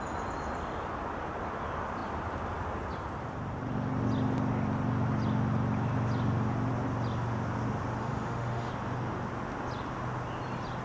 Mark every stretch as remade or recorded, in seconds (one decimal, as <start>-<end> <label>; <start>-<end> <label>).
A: 0.0-8.0 recorded; 8.0-8.7 remade; 8.7-10.8 recorded